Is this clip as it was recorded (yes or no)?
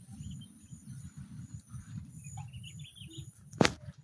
yes